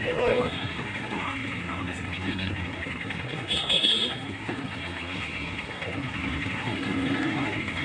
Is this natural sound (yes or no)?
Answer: no